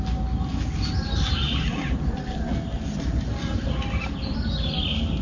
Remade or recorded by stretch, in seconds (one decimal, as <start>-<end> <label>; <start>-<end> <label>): 0.0-5.2 recorded